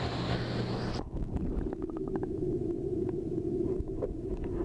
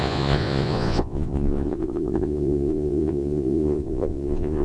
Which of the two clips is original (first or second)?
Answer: first